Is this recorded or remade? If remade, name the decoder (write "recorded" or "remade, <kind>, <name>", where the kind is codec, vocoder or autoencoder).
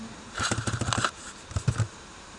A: remade, vocoder, BigVGAN v2